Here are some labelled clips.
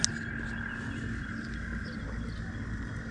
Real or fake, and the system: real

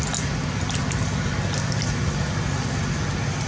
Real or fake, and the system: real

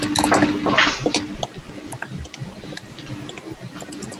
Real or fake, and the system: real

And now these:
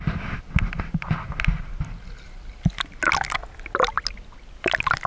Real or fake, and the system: real